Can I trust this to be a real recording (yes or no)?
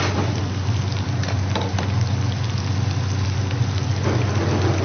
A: yes